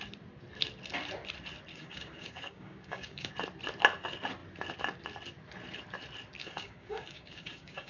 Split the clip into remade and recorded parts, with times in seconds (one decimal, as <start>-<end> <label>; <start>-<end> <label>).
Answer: 0.0-1.7 recorded; 1.7-3.3 remade; 3.3-6.4 recorded; 6.4-7.9 remade